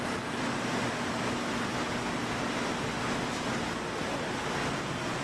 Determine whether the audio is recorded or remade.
recorded